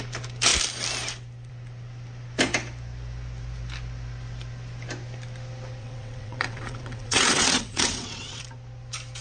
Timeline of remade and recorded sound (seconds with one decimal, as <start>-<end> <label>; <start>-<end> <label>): 0.0-5.8 recorded; 5.8-8.4 remade; 8.4-9.2 recorded